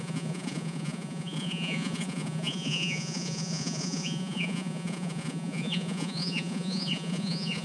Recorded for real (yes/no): no